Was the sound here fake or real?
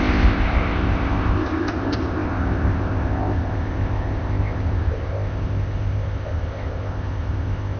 fake